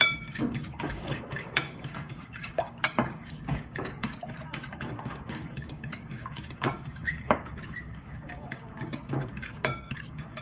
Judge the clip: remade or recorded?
remade